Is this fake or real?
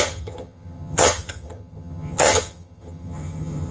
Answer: fake